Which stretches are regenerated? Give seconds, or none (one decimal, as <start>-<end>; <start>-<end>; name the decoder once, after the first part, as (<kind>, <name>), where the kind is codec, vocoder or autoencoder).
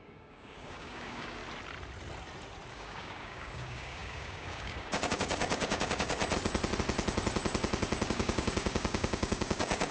0.0-1.4 (codec, DAC); 2.7-6.2; 8.1-9.9